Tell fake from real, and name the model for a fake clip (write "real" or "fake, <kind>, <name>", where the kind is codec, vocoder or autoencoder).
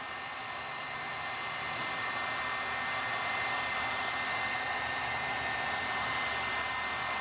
real